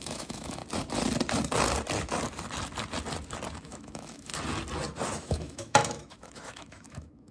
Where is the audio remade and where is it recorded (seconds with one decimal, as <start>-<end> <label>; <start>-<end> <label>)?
0.0-0.6 remade; 0.6-3.6 recorded; 3.6-4.3 remade; 4.3-5.1 recorded; 5.1-7.3 remade